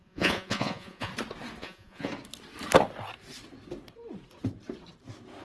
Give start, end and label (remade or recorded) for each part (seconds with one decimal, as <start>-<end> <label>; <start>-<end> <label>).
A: 0.0-1.1 remade; 1.1-1.6 recorded; 1.6-2.1 remade; 2.1-5.4 recorded